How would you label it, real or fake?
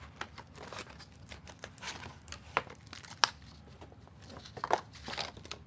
real